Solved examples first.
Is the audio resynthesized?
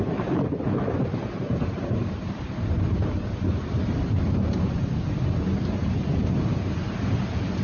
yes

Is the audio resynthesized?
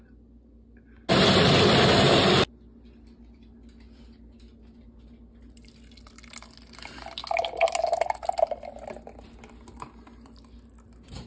no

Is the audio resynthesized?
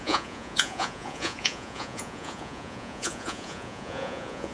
yes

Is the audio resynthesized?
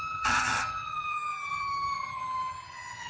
yes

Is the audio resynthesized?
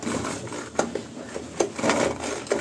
no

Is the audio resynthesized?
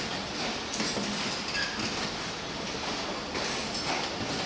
no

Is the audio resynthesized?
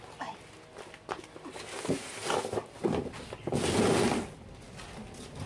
no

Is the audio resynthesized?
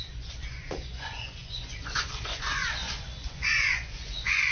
yes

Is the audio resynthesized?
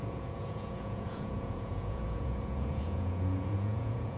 yes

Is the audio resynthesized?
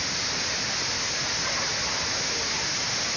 no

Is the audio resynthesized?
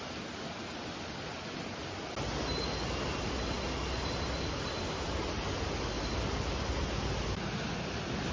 no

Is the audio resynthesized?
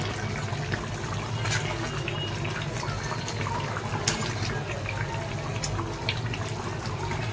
no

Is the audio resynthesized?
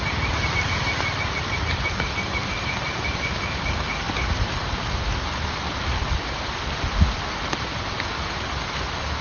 no